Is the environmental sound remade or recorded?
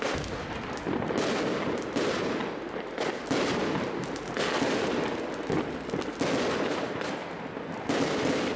recorded